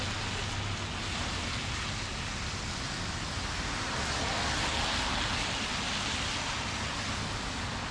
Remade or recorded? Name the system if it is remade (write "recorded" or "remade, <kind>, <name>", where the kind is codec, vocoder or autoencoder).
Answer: recorded